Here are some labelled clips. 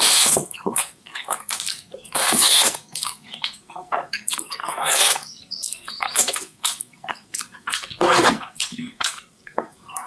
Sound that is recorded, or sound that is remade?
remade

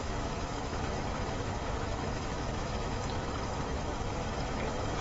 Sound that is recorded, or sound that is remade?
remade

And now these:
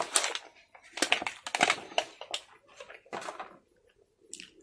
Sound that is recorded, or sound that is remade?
recorded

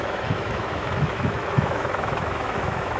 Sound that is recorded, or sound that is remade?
remade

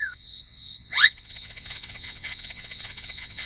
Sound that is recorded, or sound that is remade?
remade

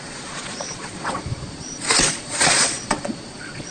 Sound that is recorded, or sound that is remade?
remade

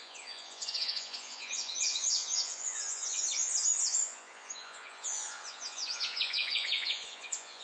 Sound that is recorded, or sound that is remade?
remade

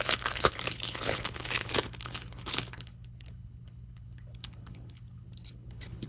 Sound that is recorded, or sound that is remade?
remade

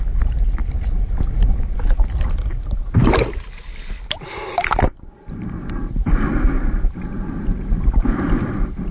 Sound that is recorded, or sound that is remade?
recorded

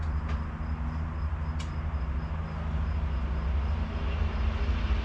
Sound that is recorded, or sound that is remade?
recorded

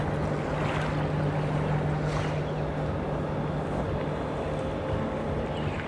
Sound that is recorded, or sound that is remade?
recorded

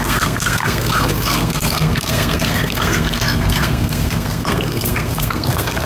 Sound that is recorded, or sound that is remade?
remade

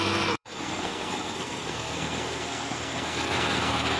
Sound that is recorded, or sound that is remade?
remade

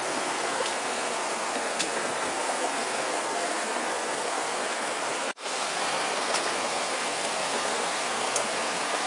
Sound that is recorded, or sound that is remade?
remade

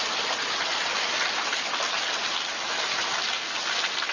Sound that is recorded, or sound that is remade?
recorded